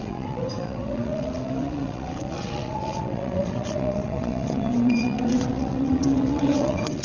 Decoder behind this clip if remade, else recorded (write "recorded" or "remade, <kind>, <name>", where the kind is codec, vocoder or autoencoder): remade, vocoder, WaveNeXt